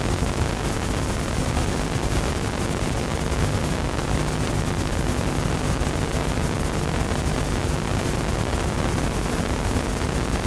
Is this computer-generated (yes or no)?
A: no